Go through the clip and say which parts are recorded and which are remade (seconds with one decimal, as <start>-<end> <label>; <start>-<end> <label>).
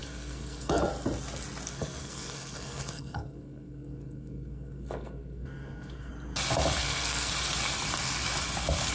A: 0.0-0.8 remade; 0.8-1.7 recorded; 1.7-6.1 remade; 6.1-6.8 recorded; 6.8-7.3 remade; 7.3-8.9 recorded